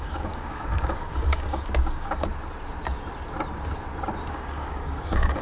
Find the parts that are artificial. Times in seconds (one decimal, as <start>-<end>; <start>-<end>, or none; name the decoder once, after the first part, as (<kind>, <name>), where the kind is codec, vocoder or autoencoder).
0.0-2.3 (codec, DAC); 4.3-5.4